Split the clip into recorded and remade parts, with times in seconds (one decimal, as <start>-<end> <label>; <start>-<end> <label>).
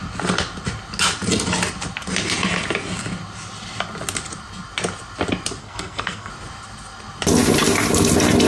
0.0-5.6 recorded; 5.6-6.3 remade; 6.3-8.5 recorded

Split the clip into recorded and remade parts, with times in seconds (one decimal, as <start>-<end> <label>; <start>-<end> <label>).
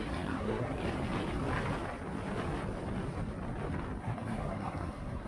0.0-0.8 remade; 0.8-4.0 recorded; 4.0-5.3 remade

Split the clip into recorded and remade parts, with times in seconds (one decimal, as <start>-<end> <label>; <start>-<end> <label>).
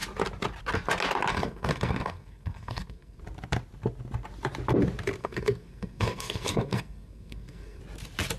0.0-1.3 recorded; 1.3-3.2 remade; 3.2-5.2 recorded; 5.2-7.8 remade; 7.8-8.4 recorded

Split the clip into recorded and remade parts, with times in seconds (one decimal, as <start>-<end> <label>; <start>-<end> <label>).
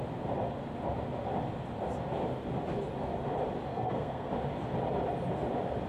0.0-3.7 recorded; 3.7-4.3 remade; 4.3-5.9 recorded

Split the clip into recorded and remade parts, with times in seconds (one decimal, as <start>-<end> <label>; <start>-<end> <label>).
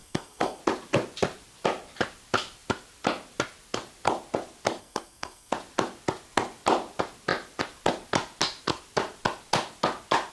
0.0-0.6 remade; 0.6-4.8 recorded; 4.8-5.5 remade; 5.5-10.3 recorded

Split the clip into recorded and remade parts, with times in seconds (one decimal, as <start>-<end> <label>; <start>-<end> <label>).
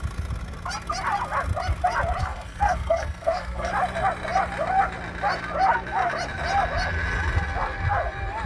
0.0-2.2 recorded; 2.2-3.7 remade; 3.7-8.5 recorded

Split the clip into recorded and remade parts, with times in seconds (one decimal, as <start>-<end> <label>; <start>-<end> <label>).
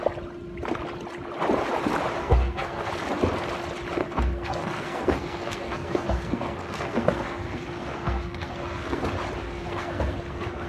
0.0-2.2 recorded; 2.2-2.9 remade; 2.9-4.0 recorded; 4.0-9.0 remade; 9.0-9.4 recorded; 9.4-10.7 remade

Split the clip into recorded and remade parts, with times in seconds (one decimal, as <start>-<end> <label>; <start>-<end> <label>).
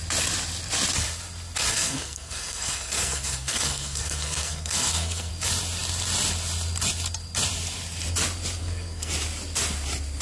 0.0-1.7 recorded; 1.7-5.3 remade; 5.3-8.6 recorded; 8.6-9.1 remade; 9.1-10.2 recorded